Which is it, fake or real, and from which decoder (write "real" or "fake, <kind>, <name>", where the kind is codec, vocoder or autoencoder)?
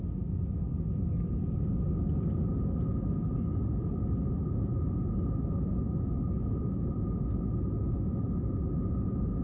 real